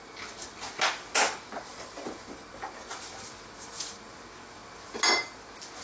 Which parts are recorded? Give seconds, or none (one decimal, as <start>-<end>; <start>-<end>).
0.0-1.7; 3.7-5.8